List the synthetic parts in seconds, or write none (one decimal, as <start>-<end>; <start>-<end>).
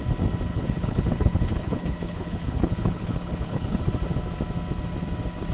0.5-3.8